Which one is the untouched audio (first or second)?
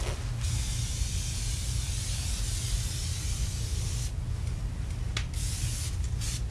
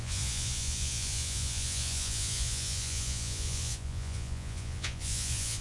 first